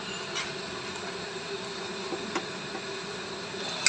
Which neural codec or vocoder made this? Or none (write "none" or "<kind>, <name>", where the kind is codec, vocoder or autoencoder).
none